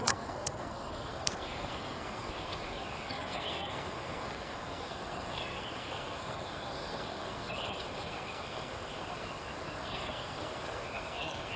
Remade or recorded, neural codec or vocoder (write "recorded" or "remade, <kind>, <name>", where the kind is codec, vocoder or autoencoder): remade, codec, SNAC